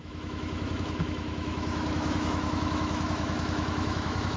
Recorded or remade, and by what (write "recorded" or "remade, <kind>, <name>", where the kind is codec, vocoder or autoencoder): remade, autoencoder, DAC-VAE